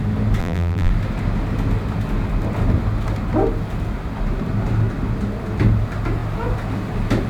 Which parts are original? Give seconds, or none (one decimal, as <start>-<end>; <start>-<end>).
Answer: 0.0-0.4; 0.9-7.3